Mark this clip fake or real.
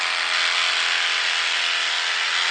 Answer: real